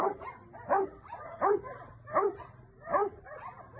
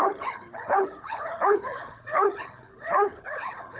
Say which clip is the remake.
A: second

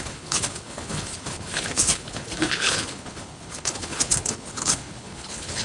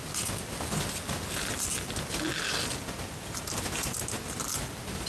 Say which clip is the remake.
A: first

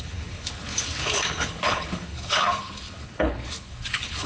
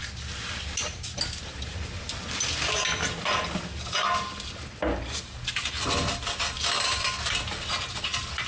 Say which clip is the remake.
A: first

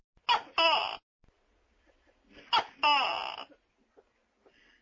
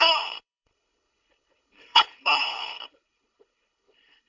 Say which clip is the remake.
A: second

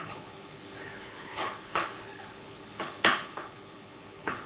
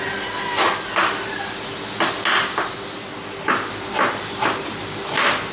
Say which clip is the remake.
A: first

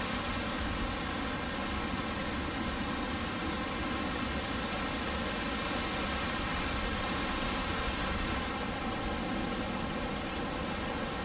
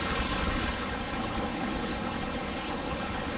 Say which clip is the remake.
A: second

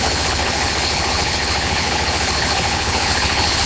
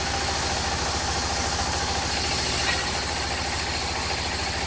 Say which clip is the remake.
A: first